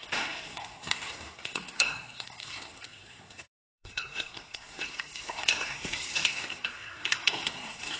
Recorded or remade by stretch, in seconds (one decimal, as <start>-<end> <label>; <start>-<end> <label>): 0.0-8.0 remade